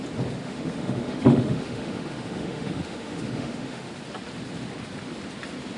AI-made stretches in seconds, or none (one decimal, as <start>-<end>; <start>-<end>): 0.4-3.9